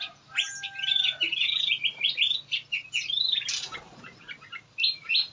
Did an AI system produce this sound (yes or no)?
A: no